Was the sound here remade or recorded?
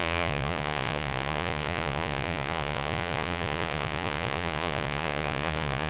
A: remade